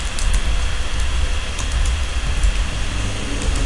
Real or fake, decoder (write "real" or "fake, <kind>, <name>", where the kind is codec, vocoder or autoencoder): real